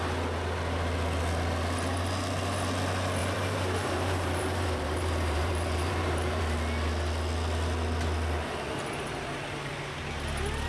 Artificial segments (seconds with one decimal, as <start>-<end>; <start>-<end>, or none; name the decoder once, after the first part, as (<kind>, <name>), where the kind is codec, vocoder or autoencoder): 3.2-6.4 (vocoder, BigVGAN v2)